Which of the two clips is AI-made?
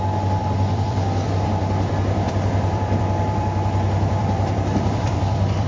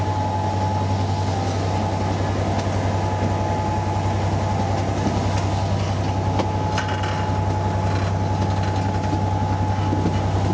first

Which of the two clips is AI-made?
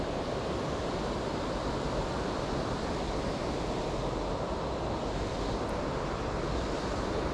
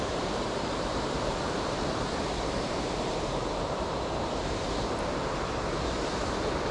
second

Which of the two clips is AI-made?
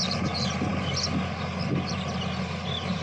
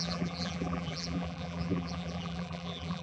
second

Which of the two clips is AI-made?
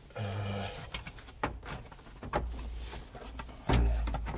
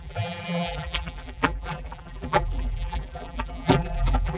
second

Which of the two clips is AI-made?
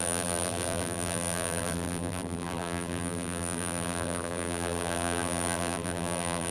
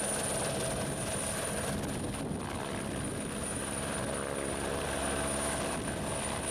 first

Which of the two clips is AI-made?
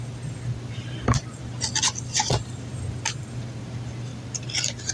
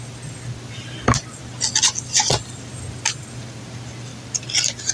first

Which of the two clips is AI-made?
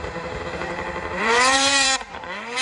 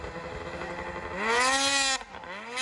first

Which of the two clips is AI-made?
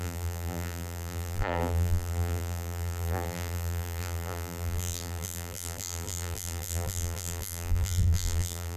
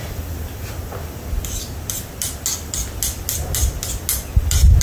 first